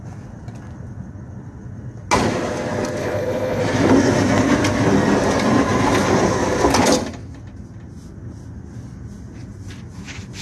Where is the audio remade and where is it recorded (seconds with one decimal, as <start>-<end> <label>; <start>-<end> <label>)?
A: 0.0-3.0 recorded; 3.0-3.6 remade; 3.6-10.4 recorded